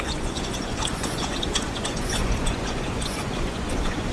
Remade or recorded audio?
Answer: remade